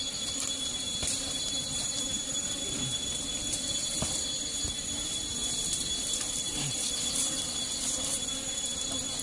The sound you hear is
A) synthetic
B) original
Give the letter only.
B